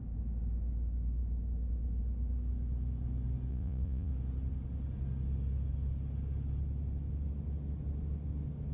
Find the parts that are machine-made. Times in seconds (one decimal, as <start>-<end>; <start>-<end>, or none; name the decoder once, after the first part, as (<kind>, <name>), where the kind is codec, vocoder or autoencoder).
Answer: 3.5-4.1 (vocoder, Vocos)